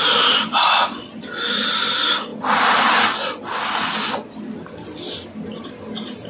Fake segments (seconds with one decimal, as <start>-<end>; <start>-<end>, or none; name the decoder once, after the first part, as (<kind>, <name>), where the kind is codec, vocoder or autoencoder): none